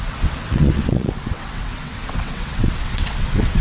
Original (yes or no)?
no